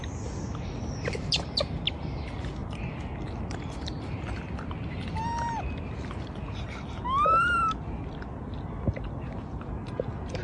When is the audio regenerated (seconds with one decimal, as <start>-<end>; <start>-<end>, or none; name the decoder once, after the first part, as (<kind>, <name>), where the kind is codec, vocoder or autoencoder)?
none